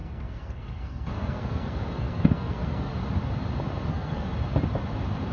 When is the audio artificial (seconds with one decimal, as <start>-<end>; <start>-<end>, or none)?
0.0-2.9; 3.9-4.3